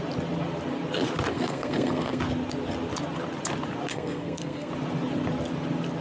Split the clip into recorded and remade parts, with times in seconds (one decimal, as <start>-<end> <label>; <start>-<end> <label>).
0.0-1.3 recorded; 1.3-2.2 remade; 2.2-3.9 recorded; 3.9-4.7 remade; 4.7-6.0 recorded